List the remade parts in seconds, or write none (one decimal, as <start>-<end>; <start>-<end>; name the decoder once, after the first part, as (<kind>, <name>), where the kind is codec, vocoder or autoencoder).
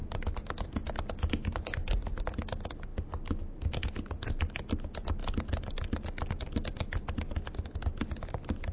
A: none